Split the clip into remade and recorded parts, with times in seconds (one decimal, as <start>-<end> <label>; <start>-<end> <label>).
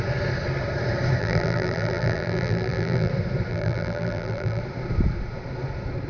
0.0-1.2 recorded; 1.2-3.1 remade; 3.1-3.5 recorded; 3.5-4.6 remade; 4.6-6.1 recorded